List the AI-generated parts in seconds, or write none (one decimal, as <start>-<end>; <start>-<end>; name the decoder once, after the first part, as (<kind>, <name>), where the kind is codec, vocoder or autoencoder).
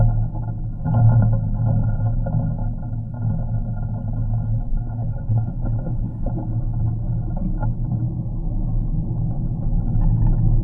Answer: 4.7-6.3 (codec, HILCodec)